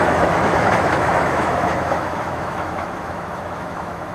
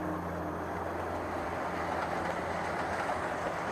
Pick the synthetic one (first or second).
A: first